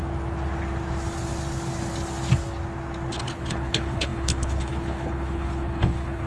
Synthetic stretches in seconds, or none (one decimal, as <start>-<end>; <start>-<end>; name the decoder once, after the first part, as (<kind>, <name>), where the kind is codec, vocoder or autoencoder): 3.1-6.3 (codec, HILCodec)